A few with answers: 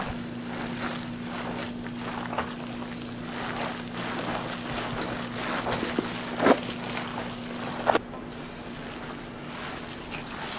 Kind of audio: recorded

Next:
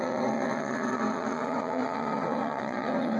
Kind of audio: remade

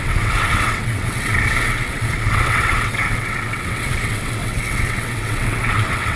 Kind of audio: remade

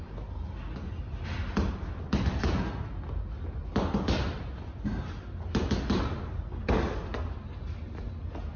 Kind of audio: recorded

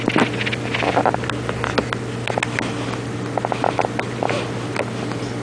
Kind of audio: recorded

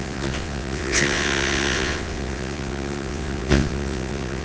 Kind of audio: remade